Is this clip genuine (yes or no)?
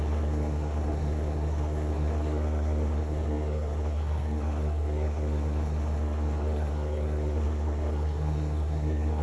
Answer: no